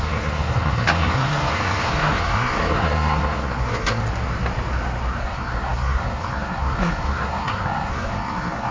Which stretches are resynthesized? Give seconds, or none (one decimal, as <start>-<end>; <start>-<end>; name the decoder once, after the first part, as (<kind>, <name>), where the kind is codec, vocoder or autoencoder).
0.0-4.0 (codec, SNAC); 5.2-8.7